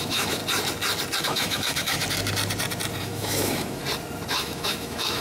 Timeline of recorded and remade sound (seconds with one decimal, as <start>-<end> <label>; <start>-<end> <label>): 0.0-0.4 remade; 0.4-1.2 recorded; 1.2-2.0 remade; 2.0-3.0 recorded; 3.0-3.8 remade; 3.8-4.3 recorded; 4.3-5.2 remade